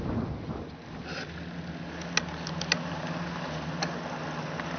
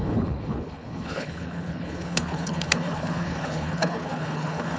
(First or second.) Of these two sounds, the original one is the first